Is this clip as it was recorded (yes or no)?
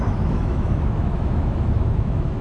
no